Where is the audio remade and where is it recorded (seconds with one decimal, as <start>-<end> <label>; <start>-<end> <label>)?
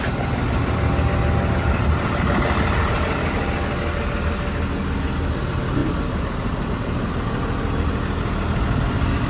0.0-9.3 recorded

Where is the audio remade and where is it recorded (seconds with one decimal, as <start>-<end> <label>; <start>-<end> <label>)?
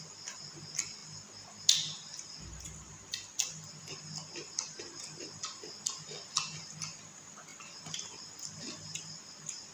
0.0-9.7 recorded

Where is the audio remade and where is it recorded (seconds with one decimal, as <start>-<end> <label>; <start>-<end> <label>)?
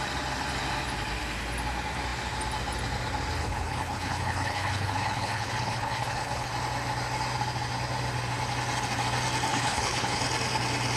0.0-3.4 recorded; 3.4-6.5 remade; 6.5-9.5 recorded; 9.5-10.2 remade; 10.2-11.0 recorded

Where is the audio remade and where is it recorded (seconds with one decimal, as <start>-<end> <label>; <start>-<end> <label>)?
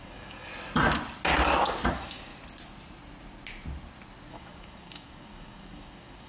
0.0-0.5 remade; 0.5-1.9 recorded; 1.9-2.3 remade; 2.3-4.3 recorded; 4.3-6.3 remade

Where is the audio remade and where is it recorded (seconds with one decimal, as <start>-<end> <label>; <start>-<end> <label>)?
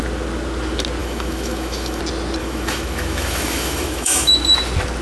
0.0-1.0 recorded; 1.0-2.0 remade; 2.0-2.4 recorded; 2.4-4.3 remade; 4.3-5.0 recorded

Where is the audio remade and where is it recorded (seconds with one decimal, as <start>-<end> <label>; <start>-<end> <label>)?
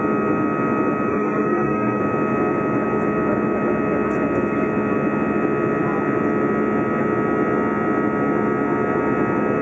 0.0-1.1 recorded; 1.1-2.0 remade; 2.0-9.6 recorded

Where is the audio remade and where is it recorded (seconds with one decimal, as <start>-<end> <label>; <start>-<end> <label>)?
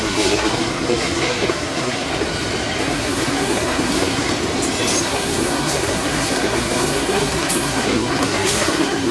0.0-2.1 remade; 2.1-2.8 recorded; 2.8-4.3 remade; 4.3-5.0 recorded; 5.0-9.1 remade